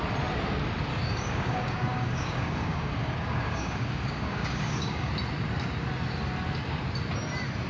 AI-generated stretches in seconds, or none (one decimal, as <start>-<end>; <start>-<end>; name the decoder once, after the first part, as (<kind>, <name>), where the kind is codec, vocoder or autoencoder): 0.9-5.1 (codec, DAC)